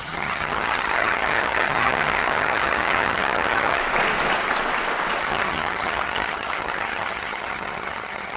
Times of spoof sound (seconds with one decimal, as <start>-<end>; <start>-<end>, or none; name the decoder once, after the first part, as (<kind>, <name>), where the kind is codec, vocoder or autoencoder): 0.0-3.8 (vocoder, HiFi-GAN); 5.2-8.4

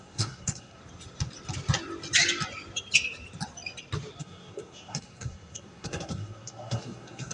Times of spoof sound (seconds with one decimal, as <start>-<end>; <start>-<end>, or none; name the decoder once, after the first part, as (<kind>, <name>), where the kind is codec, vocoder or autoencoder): 0.0-0.8 (codec, SNAC); 4.2-7.3